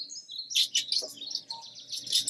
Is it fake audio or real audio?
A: real